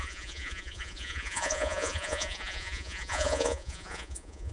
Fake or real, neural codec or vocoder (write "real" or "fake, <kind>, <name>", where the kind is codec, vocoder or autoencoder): fake, vocoder, Vocos